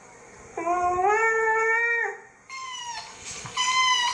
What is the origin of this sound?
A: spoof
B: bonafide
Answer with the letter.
B